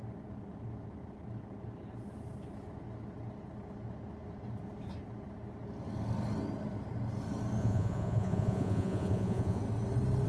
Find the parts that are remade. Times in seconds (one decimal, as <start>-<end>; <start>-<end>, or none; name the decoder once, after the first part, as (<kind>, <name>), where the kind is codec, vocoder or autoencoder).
7.6-9.6 (vocoder, Vocos)